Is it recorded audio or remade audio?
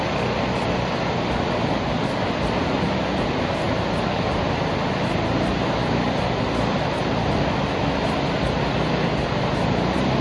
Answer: recorded